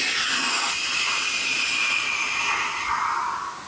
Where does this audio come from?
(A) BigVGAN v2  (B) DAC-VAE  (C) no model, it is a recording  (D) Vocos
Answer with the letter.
C